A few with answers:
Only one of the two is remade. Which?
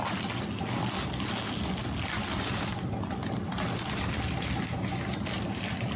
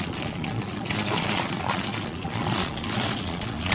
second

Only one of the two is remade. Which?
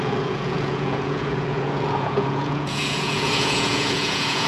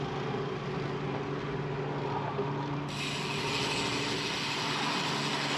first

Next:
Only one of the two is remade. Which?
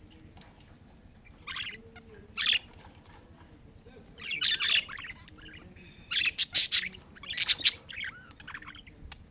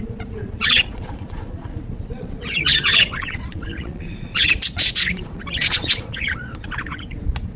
second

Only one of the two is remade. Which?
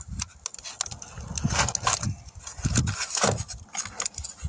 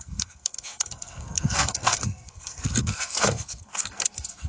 second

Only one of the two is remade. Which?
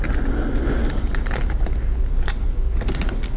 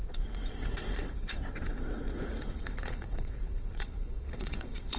second